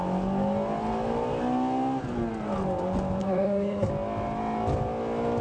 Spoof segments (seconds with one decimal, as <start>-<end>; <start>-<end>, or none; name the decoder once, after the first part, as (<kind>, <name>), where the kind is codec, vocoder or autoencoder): 3.2-3.9 (codec, SNAC)